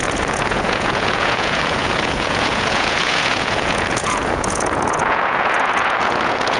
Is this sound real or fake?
fake